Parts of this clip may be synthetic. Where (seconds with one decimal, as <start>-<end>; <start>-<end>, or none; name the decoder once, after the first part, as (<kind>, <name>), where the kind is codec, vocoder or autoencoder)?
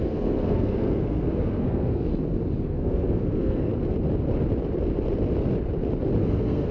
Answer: 0.0-2.1 (codec, SNAC); 2.6-3.7; 6.2-6.7